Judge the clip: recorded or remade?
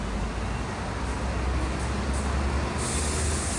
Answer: recorded